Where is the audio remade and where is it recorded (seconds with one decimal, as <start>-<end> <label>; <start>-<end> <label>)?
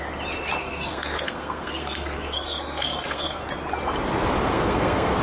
0.0-0.6 recorded; 0.6-3.4 remade; 3.4-4.5 recorded; 4.5-5.2 remade